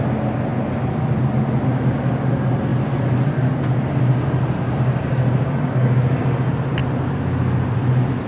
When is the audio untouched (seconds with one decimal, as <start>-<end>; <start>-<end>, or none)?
0.0-8.3